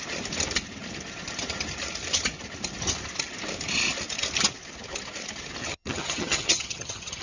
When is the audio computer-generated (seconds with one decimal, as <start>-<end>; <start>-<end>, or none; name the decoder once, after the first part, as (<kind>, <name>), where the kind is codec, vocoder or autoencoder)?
5.6-7.2 (vocoder, HiFi-GAN)